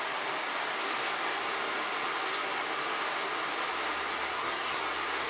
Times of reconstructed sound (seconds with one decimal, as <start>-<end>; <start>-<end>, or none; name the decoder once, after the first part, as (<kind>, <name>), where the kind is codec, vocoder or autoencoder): 4.3-4.8 (codec, SNAC)